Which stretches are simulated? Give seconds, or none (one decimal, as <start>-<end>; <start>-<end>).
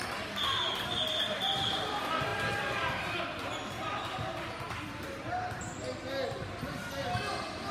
none